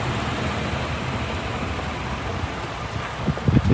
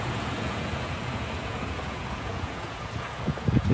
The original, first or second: first